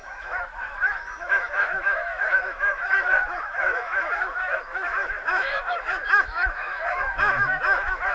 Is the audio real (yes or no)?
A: no